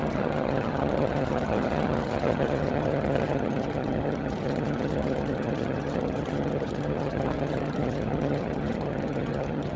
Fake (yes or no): yes